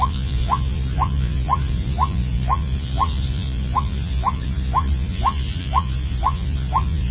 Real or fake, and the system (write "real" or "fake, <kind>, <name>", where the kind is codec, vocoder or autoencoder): fake, vocoder, Vocos